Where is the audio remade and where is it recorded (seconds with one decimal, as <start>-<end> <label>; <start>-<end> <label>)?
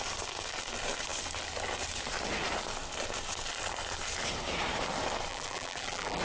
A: 0.0-5.3 recorded; 5.3-6.2 remade